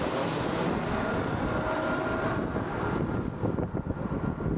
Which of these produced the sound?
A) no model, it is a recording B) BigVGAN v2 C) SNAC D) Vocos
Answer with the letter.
A